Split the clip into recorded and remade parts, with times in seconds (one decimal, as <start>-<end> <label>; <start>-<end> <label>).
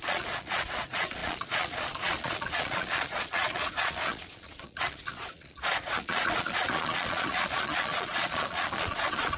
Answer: 0.0-9.4 remade